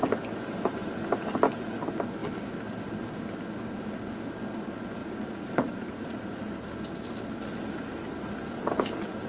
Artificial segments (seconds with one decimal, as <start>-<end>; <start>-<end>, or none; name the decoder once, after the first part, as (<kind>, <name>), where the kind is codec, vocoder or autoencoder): 5.0-6.5 (vocoder, Vocos)